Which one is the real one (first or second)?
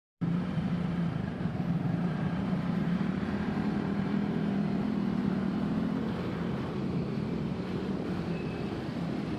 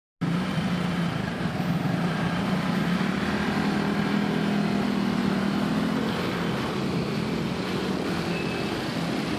second